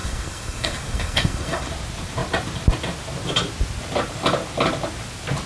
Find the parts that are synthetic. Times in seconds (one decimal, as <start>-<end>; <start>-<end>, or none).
0.0-1.7